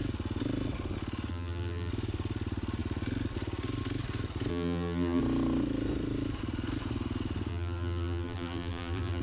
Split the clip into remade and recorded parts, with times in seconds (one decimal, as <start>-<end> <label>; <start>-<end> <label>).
0.0-1.3 recorded; 1.3-1.9 remade; 1.9-4.5 recorded; 4.5-5.2 remade; 5.2-7.5 recorded; 7.5-9.2 remade